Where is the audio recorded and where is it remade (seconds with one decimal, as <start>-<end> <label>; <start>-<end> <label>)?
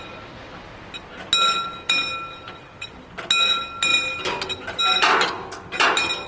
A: 0.0-6.3 recorded